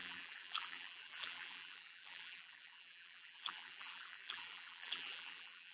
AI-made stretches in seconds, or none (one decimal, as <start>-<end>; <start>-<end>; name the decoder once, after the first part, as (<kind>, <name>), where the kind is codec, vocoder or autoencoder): 0.0-5.7 (vocoder, BigVGAN v2)